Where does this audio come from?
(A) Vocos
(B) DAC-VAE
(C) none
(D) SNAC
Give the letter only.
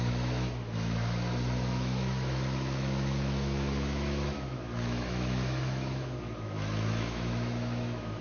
B